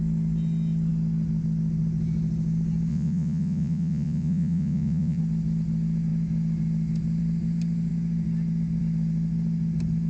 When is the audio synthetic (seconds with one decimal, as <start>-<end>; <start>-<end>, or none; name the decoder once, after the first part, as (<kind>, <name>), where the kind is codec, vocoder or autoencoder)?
2.9-5.2 (vocoder, Vocos)